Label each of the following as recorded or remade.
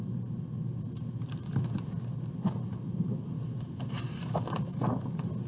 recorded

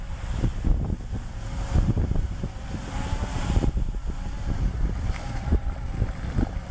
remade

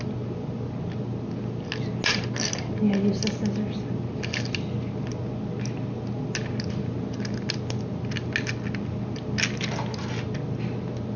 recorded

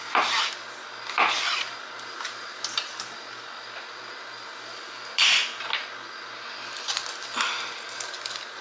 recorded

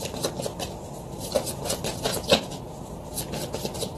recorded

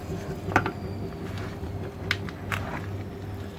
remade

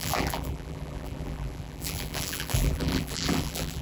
remade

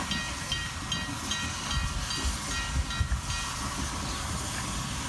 recorded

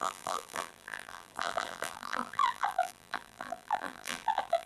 remade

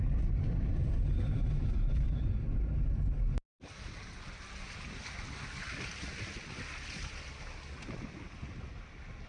recorded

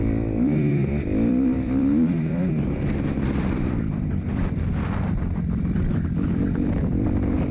remade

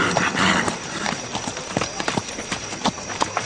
remade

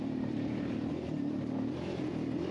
remade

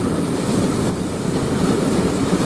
remade